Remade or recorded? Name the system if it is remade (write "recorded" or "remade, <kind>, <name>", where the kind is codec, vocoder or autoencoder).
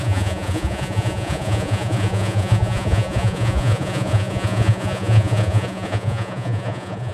remade, vocoder, Vocos